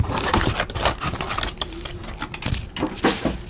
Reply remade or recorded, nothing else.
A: recorded